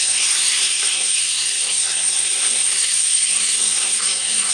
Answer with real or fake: fake